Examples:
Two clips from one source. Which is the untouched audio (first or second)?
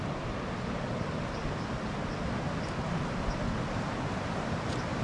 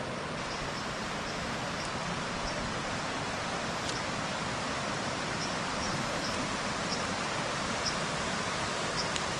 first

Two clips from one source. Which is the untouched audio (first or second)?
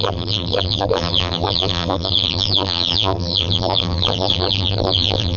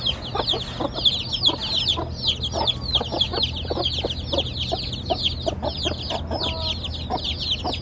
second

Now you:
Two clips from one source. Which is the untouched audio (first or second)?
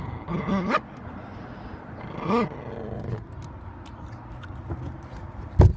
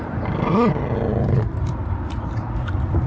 first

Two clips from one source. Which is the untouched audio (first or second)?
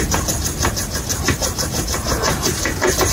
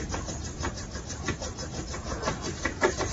first